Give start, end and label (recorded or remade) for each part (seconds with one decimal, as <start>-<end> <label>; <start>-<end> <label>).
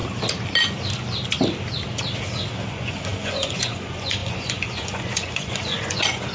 0.0-2.7 recorded; 2.7-6.3 remade